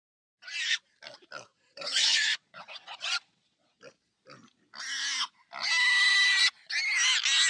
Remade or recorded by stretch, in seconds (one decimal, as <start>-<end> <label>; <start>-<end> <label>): 0.0-1.5 recorded; 1.5-3.8 remade; 3.8-7.5 recorded